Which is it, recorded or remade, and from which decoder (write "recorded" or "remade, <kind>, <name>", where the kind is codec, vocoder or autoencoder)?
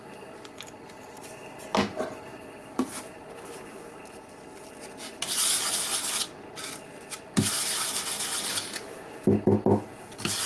recorded